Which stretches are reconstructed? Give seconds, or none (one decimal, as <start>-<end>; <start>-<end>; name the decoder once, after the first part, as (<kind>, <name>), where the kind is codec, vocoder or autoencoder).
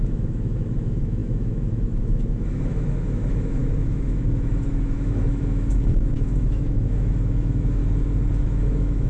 0.0-7.8 (autoencoder, DAC-VAE); 8.4-9.1